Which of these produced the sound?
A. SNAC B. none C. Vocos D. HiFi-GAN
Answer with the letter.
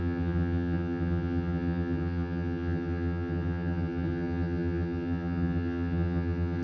D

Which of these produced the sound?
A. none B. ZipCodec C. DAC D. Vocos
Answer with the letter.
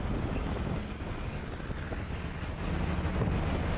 A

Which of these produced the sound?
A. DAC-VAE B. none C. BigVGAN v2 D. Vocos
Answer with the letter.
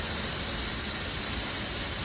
B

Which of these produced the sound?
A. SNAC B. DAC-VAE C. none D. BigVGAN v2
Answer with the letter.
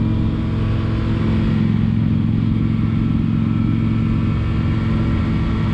C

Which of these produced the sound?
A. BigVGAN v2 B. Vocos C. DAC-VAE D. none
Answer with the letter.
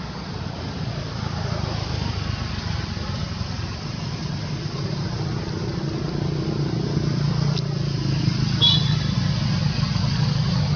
D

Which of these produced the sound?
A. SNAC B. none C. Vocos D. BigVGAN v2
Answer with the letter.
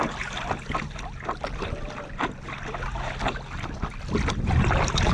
B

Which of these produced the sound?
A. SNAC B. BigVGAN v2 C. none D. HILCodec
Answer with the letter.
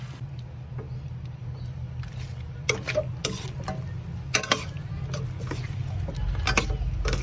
C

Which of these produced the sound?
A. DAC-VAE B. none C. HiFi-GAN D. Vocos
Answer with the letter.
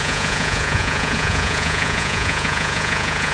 D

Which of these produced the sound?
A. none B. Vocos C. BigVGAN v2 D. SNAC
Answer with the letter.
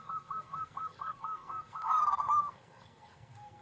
D